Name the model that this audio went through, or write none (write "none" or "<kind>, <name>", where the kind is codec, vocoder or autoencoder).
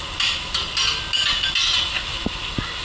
none